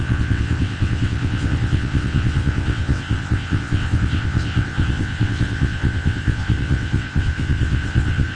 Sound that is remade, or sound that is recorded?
remade